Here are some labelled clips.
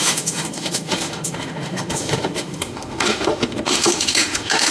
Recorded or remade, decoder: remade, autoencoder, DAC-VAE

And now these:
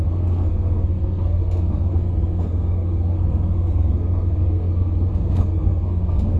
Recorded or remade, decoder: remade, codec, SNAC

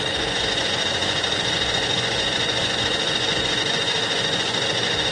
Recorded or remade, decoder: remade, vocoder, Vocos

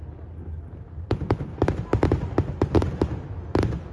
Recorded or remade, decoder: recorded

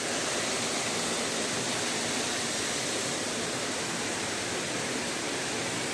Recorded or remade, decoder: recorded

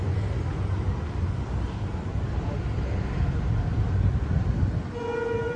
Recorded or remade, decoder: recorded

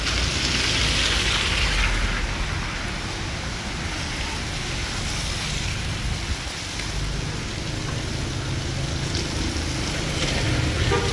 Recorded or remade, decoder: recorded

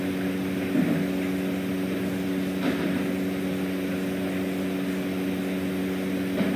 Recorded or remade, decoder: recorded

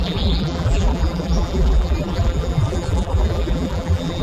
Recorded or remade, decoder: remade, vocoder, BigVGAN v2